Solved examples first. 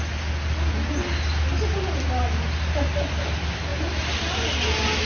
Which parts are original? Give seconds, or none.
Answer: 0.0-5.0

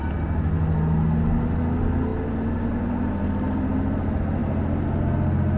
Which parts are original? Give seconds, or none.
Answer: 0.0-5.6

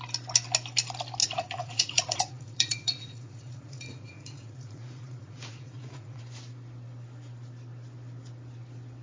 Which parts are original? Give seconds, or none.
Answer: 0.0-1.2; 6.2-9.0

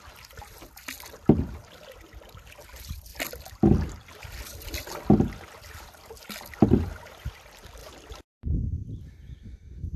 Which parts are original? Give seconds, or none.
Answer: 0.0-10.0

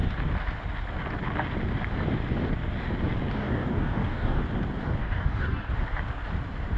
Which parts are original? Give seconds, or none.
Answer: 0.0-3.4; 4.4-5.0; 5.7-6.8

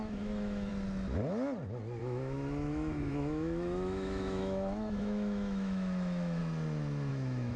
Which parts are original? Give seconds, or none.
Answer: 0.7-2.0; 6.4-7.1

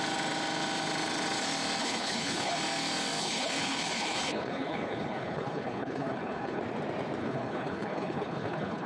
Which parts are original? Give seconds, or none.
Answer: 0.0-1.8; 2.5-3.2; 6.6-7.2

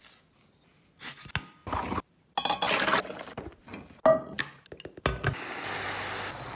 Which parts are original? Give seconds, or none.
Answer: 0.0-6.5